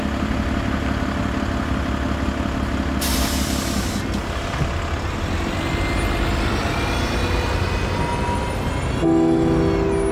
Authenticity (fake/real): real